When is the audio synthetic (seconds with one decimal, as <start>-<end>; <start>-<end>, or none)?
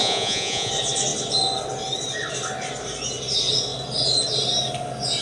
0.0-0.7